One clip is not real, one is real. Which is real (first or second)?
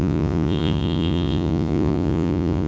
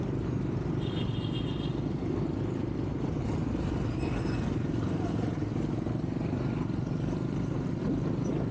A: second